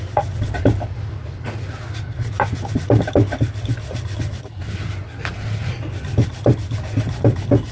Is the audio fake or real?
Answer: real